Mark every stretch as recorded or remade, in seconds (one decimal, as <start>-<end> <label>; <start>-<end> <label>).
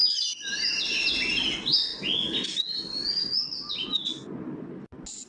0.0-5.3 recorded